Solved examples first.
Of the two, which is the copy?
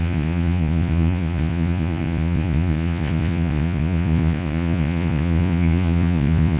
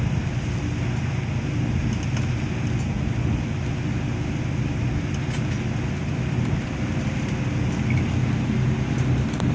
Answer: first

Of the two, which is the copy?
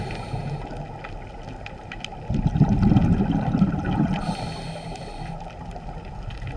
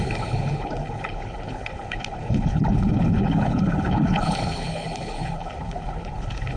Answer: second